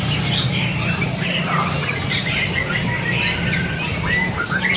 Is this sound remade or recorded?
recorded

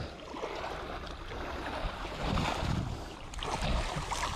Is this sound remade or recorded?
recorded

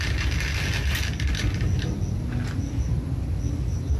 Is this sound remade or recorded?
recorded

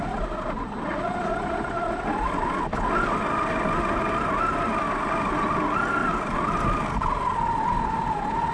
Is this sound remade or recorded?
recorded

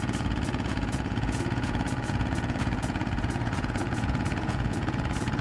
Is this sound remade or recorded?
remade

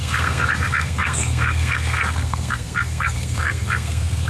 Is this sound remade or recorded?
remade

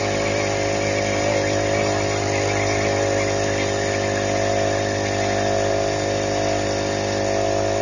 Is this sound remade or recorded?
recorded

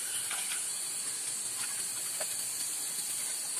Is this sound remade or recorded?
recorded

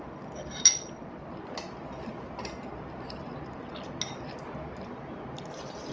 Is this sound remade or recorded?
recorded